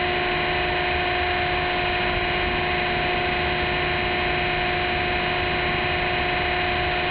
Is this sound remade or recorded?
recorded